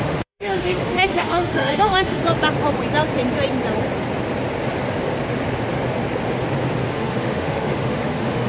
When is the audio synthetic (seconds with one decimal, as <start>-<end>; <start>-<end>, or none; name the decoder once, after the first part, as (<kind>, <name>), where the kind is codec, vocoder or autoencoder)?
0.0-2.2 (autoencoder, DAC-VAE); 6.9-8.5